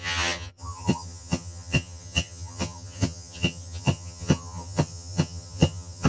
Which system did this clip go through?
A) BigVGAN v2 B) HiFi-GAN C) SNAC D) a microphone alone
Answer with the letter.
B